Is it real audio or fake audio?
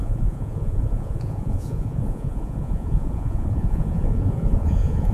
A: fake